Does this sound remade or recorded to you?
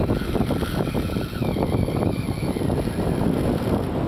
recorded